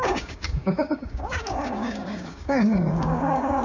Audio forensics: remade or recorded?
remade